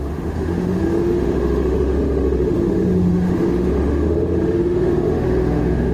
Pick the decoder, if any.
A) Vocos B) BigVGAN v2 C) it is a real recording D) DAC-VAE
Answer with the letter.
D